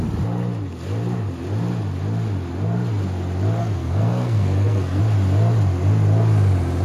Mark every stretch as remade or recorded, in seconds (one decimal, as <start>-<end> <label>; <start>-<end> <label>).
0.0-3.6 recorded; 3.6-5.0 remade; 5.0-6.8 recorded